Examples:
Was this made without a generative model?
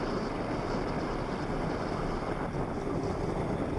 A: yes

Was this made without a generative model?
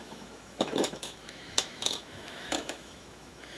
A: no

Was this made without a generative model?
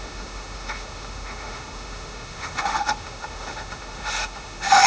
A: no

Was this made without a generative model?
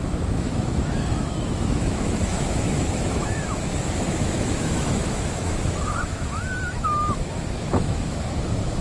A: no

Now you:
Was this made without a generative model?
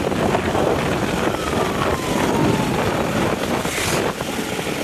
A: yes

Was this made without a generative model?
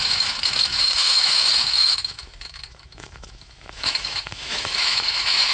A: no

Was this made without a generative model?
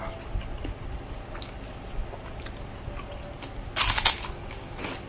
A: yes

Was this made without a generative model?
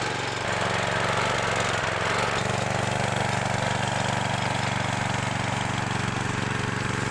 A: yes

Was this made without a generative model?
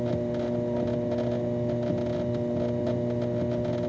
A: yes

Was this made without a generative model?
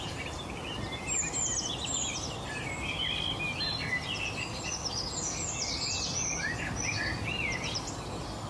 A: yes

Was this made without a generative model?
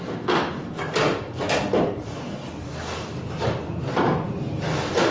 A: yes